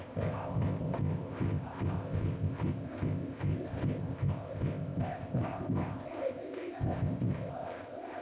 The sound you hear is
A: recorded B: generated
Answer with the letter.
B